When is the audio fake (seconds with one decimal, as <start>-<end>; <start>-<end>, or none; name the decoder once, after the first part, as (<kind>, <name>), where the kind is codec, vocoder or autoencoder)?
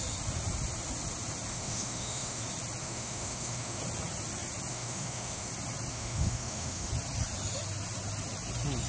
1.5-2.4 (autoencoder, DAC-VAE); 2.8-3.8; 4.7-5.5; 5.9-6.9